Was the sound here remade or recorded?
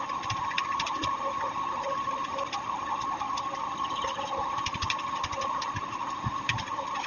recorded